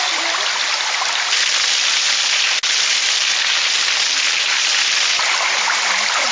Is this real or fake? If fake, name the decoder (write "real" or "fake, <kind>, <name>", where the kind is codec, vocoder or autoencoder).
real